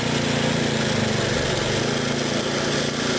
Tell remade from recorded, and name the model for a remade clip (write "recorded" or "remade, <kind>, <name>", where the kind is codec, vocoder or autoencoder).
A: recorded